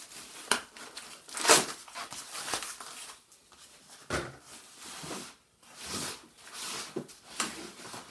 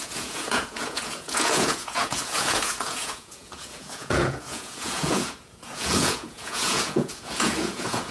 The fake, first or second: second